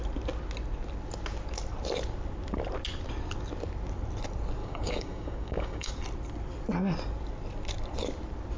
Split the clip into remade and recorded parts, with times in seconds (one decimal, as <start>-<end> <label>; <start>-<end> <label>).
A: 0.0-4.6 recorded; 4.6-5.9 remade; 5.9-8.6 recorded